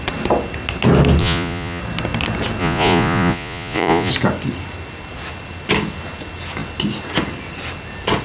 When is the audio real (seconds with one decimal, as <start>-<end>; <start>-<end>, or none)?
0.0-1.2; 1.8-2.6; 4.1-8.2

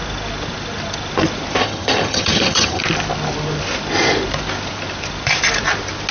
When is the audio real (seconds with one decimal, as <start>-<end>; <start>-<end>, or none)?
0.0-1.6; 2.8-6.1